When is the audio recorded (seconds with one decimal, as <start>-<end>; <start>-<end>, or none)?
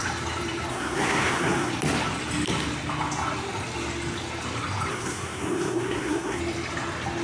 0.0-0.7; 1.7-4.9; 6.4-7.2